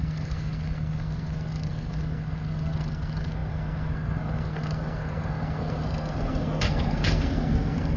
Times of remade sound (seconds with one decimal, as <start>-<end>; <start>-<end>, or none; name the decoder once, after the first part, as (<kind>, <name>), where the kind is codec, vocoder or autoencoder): 0.0-8.0 (codec, SNAC)